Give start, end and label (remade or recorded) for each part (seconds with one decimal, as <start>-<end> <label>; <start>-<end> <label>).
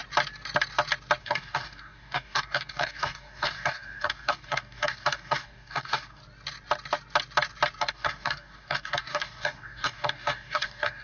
0.0-1.2 recorded; 1.2-6.2 remade; 6.2-7.8 recorded; 7.8-11.0 remade